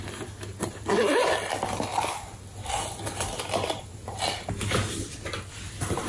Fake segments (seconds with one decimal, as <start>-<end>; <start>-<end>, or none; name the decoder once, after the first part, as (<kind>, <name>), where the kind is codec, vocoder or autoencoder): 0.6-1.9 (vocoder, BigVGAN v2); 2.4-6.1